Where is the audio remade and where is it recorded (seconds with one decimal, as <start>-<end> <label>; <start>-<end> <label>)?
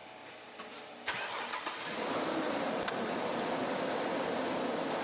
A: 0.0-5.0 recorded